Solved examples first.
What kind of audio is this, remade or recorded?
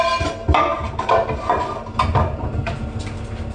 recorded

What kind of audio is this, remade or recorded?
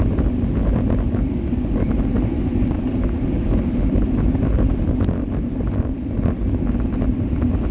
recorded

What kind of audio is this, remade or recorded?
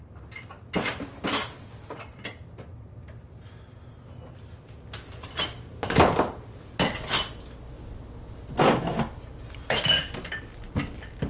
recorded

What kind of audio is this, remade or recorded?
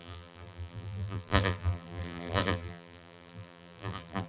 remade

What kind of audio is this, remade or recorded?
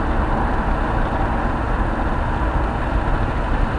recorded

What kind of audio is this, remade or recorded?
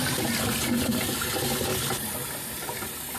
recorded